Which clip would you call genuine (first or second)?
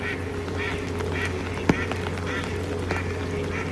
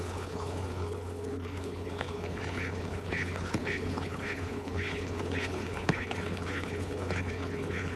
first